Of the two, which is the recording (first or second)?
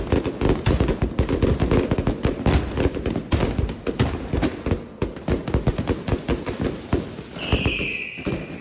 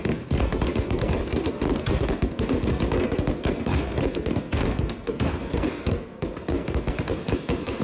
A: first